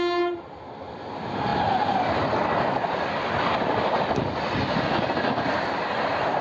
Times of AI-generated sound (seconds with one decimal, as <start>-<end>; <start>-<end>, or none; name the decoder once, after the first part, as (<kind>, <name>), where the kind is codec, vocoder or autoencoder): none